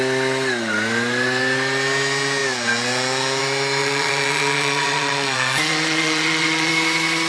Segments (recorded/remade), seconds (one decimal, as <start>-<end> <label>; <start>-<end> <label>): 0.0-3.8 recorded; 3.8-6.7 remade; 6.7-7.3 recorded

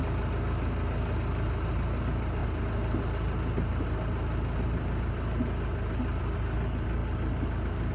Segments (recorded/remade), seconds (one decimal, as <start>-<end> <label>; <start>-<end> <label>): 0.0-7.9 recorded

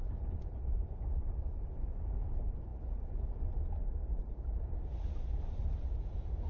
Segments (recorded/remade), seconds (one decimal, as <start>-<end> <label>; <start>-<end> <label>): 0.0-6.5 recorded

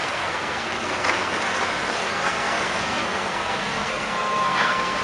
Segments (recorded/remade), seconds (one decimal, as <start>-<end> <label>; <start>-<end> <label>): 0.0-5.0 remade

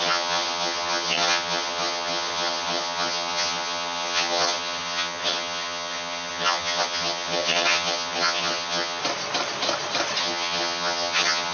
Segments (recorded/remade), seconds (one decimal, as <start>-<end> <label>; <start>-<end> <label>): 0.0-9.0 remade; 9.0-10.2 recorded; 10.2-11.5 remade

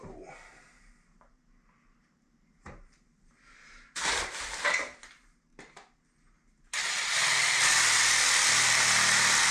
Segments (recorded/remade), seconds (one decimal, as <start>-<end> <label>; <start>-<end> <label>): 0.0-5.5 remade; 5.5-9.5 recorded